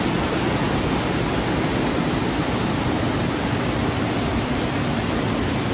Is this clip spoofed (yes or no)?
no